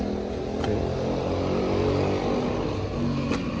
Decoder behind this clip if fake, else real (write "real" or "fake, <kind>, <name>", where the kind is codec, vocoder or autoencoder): real